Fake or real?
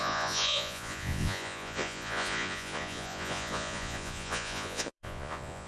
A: fake